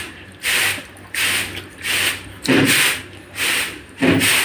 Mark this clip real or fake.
real